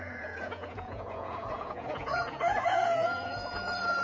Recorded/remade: remade